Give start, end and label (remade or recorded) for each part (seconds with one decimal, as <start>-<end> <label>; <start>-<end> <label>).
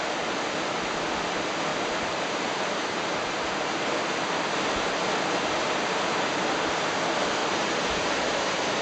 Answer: 0.0-1.7 recorded; 1.7-3.8 remade; 3.8-7.4 recorded; 7.4-8.3 remade; 8.3-8.8 recorded